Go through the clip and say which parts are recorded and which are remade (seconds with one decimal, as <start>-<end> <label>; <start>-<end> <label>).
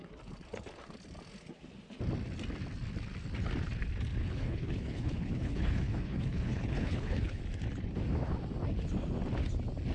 0.0-4.2 recorded; 4.2-7.4 remade; 7.4-9.9 recorded